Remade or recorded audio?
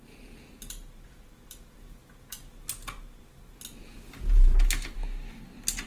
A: recorded